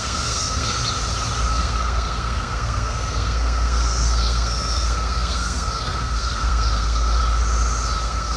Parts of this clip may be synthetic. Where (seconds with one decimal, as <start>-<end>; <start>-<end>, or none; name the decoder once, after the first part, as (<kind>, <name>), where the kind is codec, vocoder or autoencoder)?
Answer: 0.0-0.8 (codec, SNAC); 1.5-7.2; 8.0-8.4